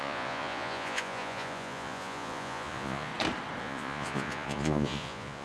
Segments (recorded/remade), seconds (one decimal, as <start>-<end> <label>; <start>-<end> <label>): 0.0-3.1 remade; 3.1-3.6 recorded; 3.6-5.4 remade

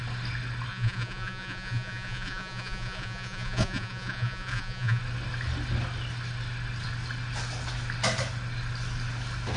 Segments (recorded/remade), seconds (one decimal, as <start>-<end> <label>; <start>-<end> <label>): 0.0-0.7 recorded; 0.7-5.0 remade; 5.0-9.6 recorded